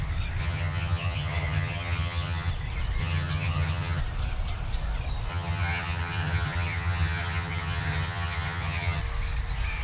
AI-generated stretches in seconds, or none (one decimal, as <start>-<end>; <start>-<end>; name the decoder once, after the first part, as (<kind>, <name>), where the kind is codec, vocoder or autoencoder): 0.4-2.5 (vocoder, HiFi-GAN); 3.0-4.0; 5.3-9.0